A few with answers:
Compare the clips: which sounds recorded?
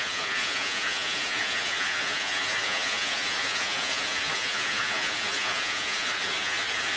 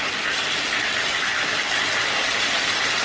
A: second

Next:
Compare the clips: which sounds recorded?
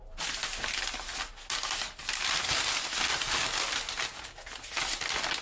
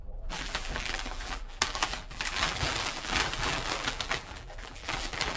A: first